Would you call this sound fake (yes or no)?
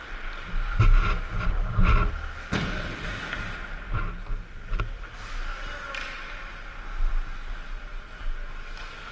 no